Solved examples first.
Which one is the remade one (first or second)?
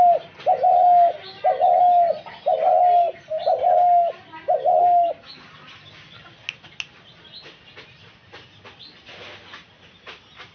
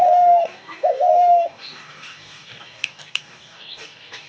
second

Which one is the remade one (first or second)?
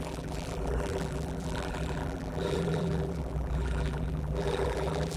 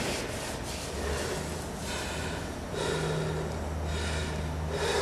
first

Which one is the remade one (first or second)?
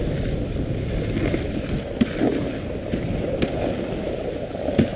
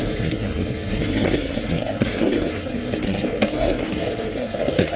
second